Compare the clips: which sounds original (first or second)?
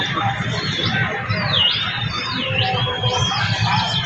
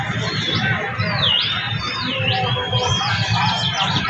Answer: second